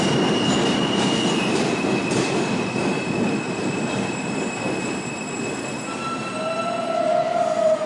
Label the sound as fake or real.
real